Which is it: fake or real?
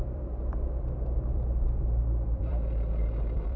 fake